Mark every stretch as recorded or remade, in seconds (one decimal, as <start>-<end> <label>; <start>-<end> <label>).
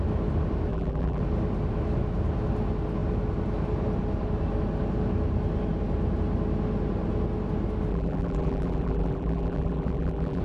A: 0.0-0.7 recorded; 0.7-1.2 remade; 1.2-7.9 recorded; 7.9-10.4 remade